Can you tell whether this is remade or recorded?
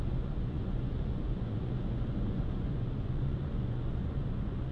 remade